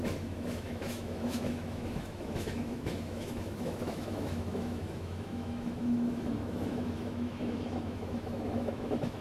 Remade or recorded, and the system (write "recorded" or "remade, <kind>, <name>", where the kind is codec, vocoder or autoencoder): remade, autoencoder, DAC-VAE